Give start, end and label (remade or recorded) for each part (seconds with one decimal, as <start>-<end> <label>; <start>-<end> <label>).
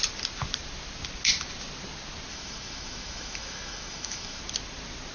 0.0-2.3 recorded; 2.3-4.4 remade; 4.4-5.1 recorded